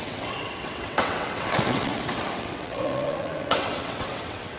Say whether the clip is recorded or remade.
remade